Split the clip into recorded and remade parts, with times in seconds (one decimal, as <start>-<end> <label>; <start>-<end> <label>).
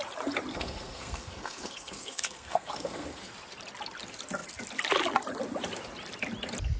0.0-0.5 recorded; 0.5-3.3 remade; 3.3-6.8 recorded